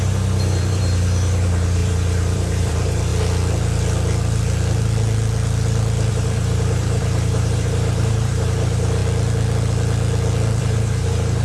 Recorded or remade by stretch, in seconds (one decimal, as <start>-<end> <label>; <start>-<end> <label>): 0.0-3.1 remade; 3.1-6.1 recorded; 6.1-9.0 remade; 9.0-10.6 recorded; 10.6-11.4 remade